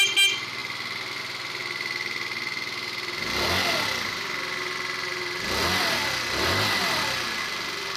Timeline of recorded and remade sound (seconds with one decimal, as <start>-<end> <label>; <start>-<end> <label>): 0.0-8.0 recorded

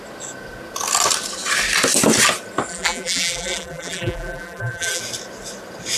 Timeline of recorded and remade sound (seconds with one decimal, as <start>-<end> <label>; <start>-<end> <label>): 0.0-2.7 recorded; 2.7-5.0 remade; 5.0-6.0 recorded

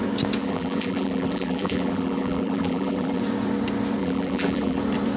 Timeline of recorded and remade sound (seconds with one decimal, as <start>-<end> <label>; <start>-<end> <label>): 0.0-0.4 recorded; 0.4-3.2 remade; 3.2-4.0 recorded; 4.0-4.8 remade; 4.8-5.2 recorded